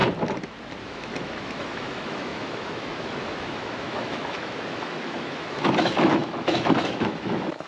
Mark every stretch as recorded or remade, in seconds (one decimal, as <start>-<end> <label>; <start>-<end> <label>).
0.0-0.8 recorded; 0.8-7.7 remade